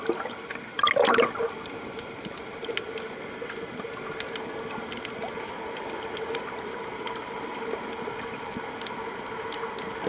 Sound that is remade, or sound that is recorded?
recorded